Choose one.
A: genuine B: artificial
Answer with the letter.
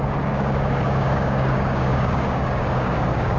B